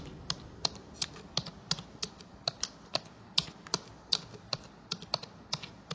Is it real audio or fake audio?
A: real